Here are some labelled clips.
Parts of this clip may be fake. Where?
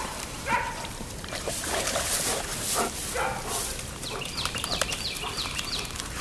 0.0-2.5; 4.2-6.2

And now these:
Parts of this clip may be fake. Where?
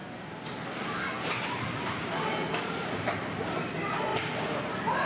none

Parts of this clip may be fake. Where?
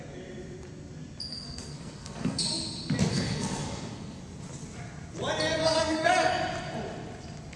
1.3-2.4; 3.1-4.2; 5.6-6.3